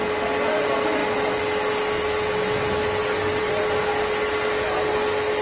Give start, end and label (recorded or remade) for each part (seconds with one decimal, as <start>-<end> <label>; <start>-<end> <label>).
0.0-5.4 recorded